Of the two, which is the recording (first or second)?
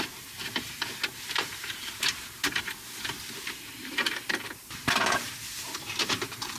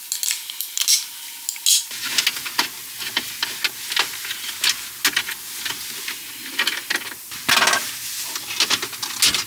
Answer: second